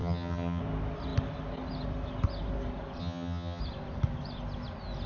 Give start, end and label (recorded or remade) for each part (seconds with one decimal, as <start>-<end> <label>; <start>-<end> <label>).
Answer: 0.0-0.6 remade; 0.6-3.0 recorded; 3.0-3.6 remade; 3.6-5.1 recorded